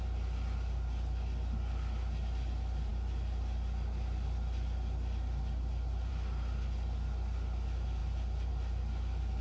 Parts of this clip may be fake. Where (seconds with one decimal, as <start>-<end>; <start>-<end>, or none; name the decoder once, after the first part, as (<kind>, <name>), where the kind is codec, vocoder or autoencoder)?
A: none